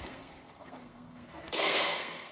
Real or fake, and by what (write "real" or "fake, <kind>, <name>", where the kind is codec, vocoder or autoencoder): fake, codec, SNAC